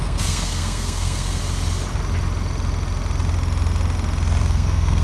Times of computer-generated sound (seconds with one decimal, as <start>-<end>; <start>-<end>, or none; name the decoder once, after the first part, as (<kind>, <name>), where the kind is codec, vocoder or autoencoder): 0.0-1.4 (codec, SNAC); 4.4-5.0